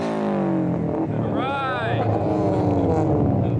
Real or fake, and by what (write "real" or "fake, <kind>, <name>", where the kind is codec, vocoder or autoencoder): real